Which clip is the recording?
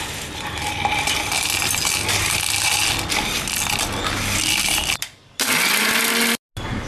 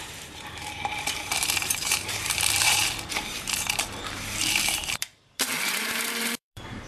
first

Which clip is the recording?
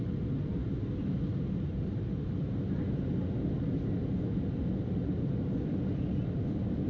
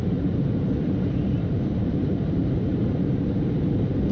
first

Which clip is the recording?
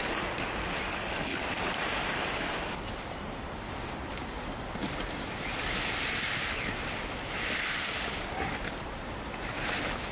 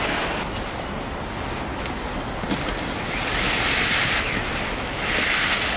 second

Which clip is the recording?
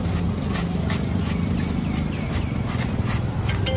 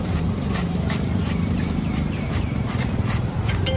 first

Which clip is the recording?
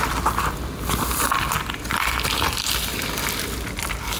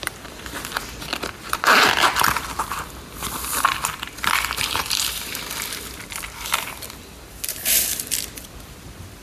first